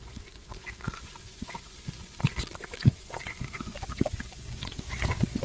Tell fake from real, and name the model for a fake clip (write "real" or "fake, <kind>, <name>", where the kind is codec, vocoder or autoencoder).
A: fake, vocoder, Vocos